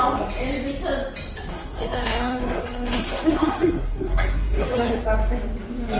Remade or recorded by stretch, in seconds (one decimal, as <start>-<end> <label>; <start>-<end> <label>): 0.0-1.5 recorded; 1.5-5.0 remade; 5.0-6.0 recorded